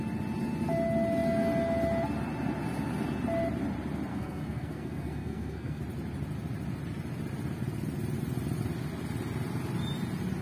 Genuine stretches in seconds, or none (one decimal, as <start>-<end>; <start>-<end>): 0.0-4.1; 5.8-10.4